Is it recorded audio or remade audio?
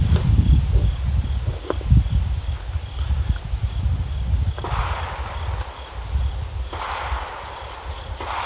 recorded